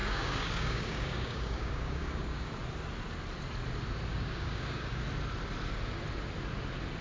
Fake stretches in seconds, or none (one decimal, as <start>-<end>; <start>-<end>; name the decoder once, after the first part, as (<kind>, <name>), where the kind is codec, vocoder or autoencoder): 0.0-2.5 (codec, DAC); 4.1-5.0